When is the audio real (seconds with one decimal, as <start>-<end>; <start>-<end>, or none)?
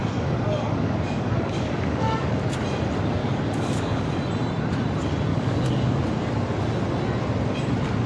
2.4-3.2; 4.1-5.3; 6.0-8.1